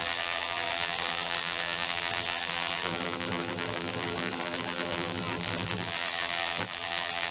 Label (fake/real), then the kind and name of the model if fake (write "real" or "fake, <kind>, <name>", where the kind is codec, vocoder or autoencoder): fake, vocoder, BigVGAN v2